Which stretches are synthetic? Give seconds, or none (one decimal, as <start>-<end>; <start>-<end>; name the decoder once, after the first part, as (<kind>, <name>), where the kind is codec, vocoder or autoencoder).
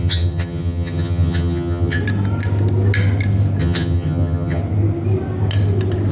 0.0-2.0 (vocoder, HiFi-GAN); 3.6-4.6